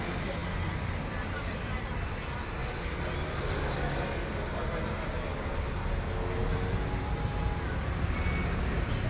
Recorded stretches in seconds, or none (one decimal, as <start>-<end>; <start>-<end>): 0.0-0.4; 2.2-2.6; 3.6-6.4; 7.4-9.1